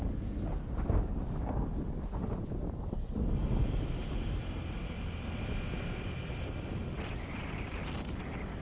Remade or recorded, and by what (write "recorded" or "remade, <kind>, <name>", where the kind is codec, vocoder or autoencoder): recorded